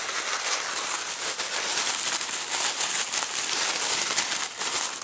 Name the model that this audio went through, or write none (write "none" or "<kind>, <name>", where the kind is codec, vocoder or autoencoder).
none